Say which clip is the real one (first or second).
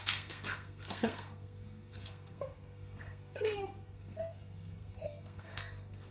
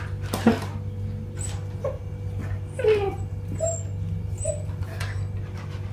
second